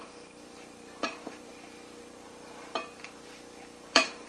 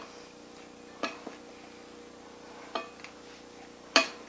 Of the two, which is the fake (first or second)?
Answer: first